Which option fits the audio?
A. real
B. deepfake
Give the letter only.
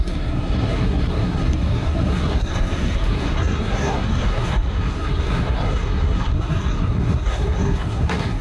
B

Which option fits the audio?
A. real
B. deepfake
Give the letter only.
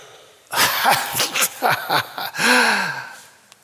A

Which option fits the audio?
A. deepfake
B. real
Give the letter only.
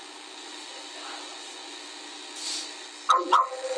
B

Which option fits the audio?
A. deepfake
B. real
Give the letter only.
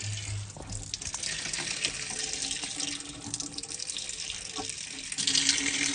B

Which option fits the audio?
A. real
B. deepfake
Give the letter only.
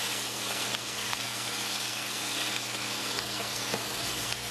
B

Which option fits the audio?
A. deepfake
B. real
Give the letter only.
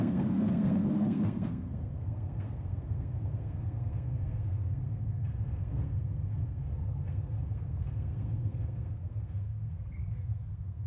A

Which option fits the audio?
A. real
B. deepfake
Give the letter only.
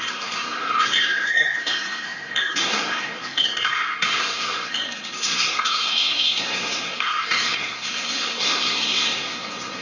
B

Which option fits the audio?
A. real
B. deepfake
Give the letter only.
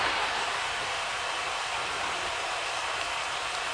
A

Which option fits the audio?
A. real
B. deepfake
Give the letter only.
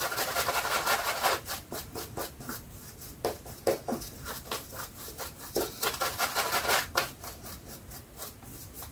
A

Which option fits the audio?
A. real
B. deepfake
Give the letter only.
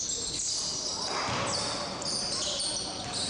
A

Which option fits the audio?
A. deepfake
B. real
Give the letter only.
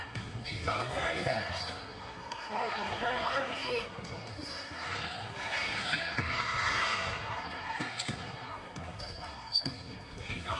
A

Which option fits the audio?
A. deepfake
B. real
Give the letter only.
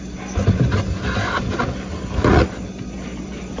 B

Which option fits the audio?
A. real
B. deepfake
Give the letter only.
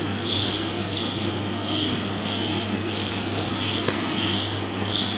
B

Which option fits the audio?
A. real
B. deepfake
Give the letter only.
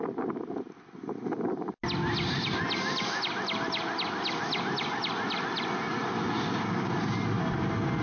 A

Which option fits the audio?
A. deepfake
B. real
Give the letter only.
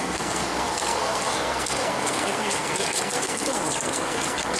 A